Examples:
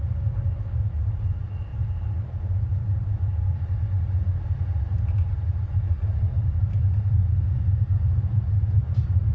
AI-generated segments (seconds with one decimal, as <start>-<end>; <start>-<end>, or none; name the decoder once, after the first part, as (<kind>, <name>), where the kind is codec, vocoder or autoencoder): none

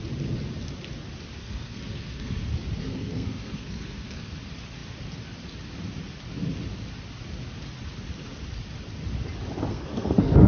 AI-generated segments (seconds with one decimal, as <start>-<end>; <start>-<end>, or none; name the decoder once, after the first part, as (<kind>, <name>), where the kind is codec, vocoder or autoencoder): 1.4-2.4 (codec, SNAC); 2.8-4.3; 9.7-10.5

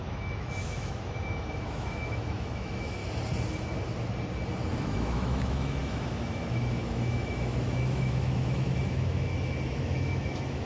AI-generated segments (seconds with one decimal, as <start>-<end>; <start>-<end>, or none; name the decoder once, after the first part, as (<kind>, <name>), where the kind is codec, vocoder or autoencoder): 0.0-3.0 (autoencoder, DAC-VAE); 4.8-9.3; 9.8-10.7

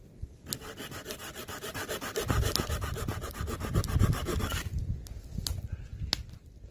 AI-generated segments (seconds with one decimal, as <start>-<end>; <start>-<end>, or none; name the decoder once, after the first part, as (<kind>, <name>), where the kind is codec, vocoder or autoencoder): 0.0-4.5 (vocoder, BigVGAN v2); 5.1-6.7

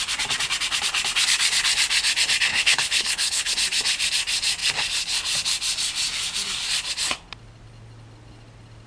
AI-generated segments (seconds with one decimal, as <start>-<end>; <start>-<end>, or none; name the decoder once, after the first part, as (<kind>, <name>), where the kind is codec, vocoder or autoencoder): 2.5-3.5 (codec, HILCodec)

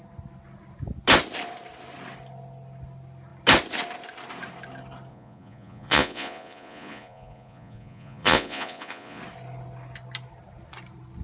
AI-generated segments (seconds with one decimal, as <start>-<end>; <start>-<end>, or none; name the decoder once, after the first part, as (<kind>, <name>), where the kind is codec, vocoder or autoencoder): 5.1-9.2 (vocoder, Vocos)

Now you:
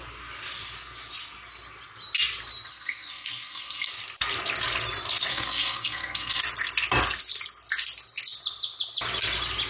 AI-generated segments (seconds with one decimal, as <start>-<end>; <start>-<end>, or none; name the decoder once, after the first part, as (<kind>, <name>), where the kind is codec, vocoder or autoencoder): 2.7-3.9 (codec, SNAC); 5.3-6.4